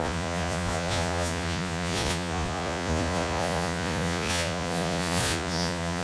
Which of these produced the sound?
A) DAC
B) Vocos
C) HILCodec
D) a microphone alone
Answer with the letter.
B